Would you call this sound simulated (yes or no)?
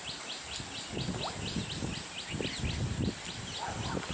no